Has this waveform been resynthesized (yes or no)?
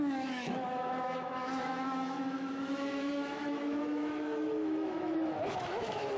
yes